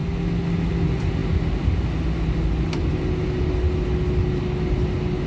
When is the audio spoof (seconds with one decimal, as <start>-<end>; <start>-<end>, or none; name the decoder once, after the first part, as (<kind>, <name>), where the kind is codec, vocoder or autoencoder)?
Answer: none